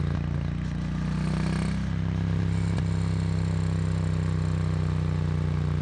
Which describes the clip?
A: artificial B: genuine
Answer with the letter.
B